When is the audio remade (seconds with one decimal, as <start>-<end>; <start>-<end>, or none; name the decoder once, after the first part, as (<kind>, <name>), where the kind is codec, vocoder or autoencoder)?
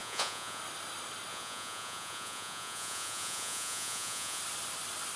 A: 0.0-0.6 (vocoder, Vocos); 1.3-4.4